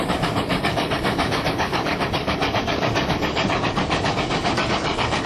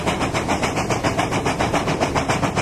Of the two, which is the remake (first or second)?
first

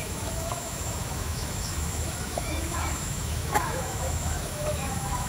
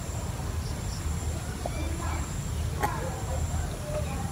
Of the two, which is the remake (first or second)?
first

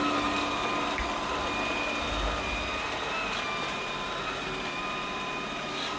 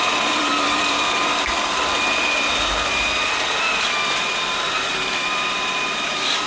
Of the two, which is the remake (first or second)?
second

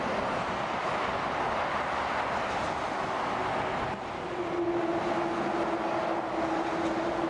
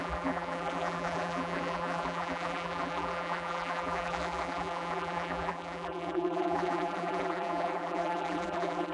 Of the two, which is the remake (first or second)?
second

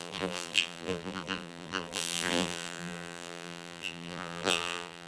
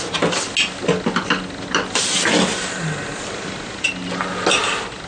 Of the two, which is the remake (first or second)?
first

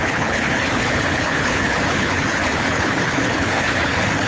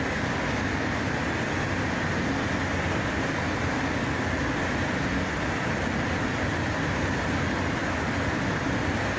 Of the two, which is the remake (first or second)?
first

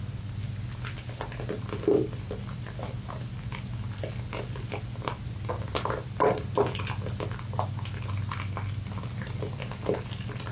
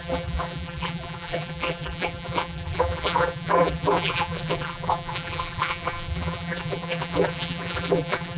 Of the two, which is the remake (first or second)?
second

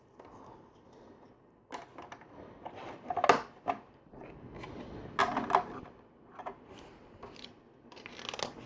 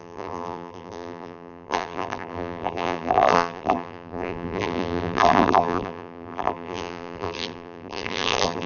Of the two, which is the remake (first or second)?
second